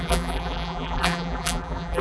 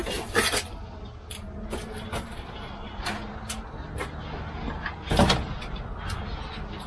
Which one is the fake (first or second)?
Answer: first